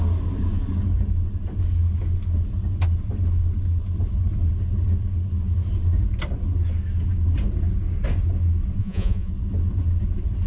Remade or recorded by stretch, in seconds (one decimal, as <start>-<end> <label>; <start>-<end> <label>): 0.0-8.8 recorded; 8.8-9.3 remade; 9.3-10.5 recorded